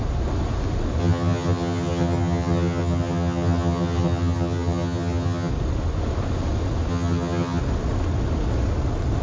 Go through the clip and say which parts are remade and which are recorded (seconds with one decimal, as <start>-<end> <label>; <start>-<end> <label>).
0.0-1.0 recorded; 1.0-5.5 remade; 5.5-6.9 recorded; 6.9-7.6 remade; 7.6-9.2 recorded